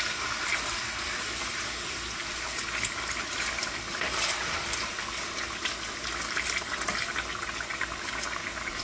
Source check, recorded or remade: remade